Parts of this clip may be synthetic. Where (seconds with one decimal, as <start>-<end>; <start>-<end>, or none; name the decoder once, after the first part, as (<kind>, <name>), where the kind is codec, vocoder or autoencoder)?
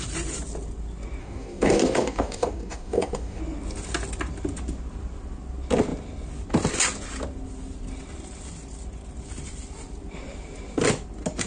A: 1.2-3.4 (codec, DAC)